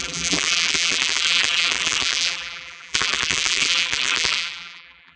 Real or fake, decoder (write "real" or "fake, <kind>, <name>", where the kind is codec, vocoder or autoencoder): fake, vocoder, BigVGAN v2